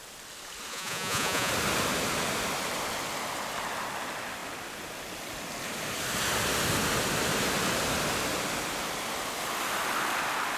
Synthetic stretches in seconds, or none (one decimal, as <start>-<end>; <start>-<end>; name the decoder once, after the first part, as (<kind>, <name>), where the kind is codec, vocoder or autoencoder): 0.7-1.5 (vocoder, Vocos)